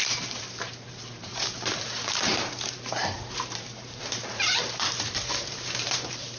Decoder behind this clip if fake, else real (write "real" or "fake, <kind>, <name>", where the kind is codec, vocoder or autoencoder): fake, vocoder, BigVGAN v2